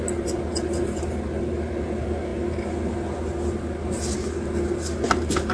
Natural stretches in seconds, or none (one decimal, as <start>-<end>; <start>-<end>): 0.0-5.5